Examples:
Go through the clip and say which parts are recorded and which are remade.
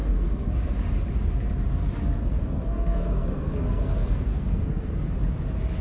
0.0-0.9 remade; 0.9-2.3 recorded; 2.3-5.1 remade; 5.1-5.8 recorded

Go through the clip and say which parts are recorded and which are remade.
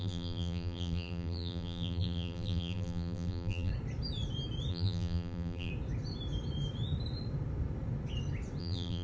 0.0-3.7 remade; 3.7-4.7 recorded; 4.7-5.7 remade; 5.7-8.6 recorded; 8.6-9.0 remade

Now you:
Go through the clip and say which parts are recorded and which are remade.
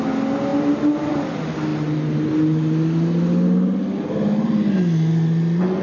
0.0-5.8 recorded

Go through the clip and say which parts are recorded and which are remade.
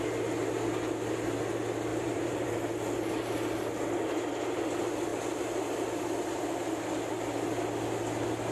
0.0-1.9 recorded; 1.9-2.5 remade; 2.5-8.5 recorded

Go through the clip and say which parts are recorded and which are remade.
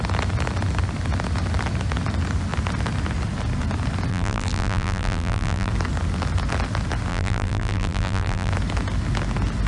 0.0-4.1 recorded; 4.1-5.7 remade; 5.7-7.1 recorded; 7.1-8.5 remade; 8.5-9.7 recorded